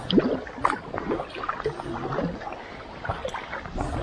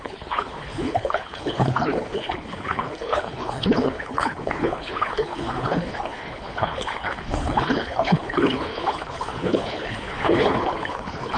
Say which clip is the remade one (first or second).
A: second